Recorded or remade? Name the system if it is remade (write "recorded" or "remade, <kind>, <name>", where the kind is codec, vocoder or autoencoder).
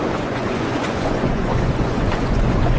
remade, vocoder, Vocos